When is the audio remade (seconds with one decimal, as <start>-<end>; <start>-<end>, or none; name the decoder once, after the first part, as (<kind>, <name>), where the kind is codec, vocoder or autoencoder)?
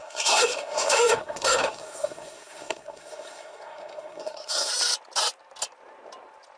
0.0-4.7 (codec, SNAC)